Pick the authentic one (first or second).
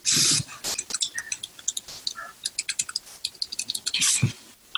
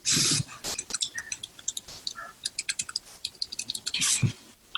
first